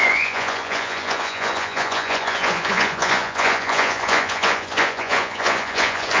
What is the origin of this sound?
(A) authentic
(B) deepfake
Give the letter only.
B